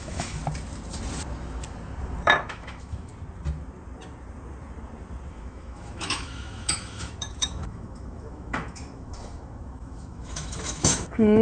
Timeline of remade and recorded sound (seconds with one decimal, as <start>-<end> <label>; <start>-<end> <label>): 0.0-0.4 remade; 0.4-2.4 recorded; 2.4-3.1 remade; 3.1-5.3 recorded; 5.3-11.4 remade